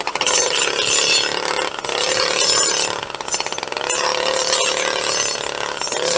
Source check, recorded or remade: recorded